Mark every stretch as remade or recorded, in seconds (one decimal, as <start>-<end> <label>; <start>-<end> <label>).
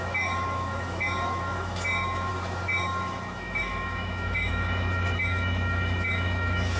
0.0-6.8 remade